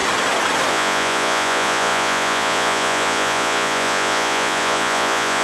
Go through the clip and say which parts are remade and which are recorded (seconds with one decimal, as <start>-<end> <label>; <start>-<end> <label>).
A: 0.0-0.7 recorded; 0.7-5.4 remade